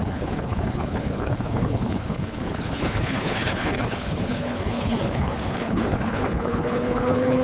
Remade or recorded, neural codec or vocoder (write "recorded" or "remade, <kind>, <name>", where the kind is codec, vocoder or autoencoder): remade, codec, HILCodec